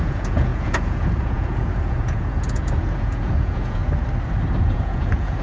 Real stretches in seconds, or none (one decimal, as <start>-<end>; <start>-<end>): 3.8-4.6